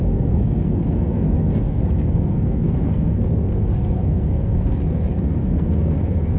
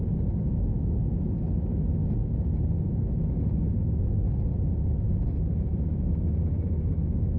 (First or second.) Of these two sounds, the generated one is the first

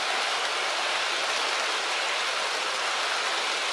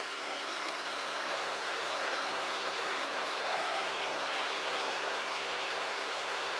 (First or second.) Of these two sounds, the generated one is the second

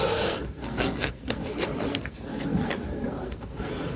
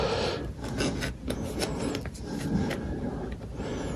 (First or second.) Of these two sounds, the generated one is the first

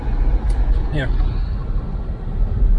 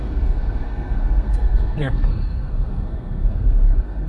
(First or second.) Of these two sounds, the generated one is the second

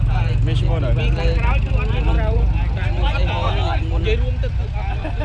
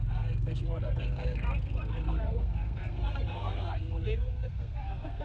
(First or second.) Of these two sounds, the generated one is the second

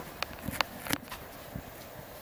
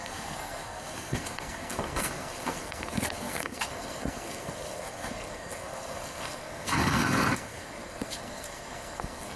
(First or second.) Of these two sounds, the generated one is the second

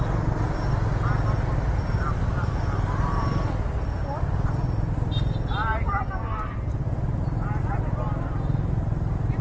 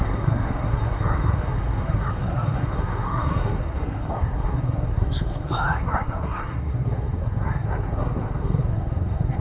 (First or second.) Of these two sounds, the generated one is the second